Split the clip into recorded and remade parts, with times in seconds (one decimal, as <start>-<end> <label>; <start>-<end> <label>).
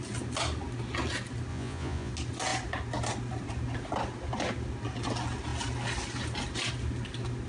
0.0-1.5 recorded; 1.5-2.1 remade; 2.1-7.5 recorded